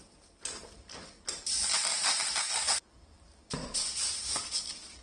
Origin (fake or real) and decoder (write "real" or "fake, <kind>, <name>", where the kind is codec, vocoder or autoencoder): real